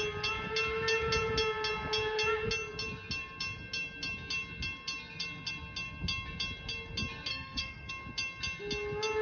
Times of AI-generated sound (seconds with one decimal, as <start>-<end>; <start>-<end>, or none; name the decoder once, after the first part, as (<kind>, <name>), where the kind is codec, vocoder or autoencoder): 7.3-7.9 (codec, SNAC)